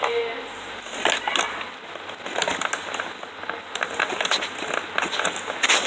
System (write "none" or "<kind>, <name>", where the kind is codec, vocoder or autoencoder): none